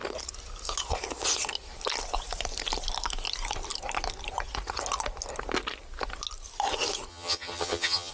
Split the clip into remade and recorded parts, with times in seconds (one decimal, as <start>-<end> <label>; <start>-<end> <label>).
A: 0.0-7.1 recorded; 7.1-8.1 remade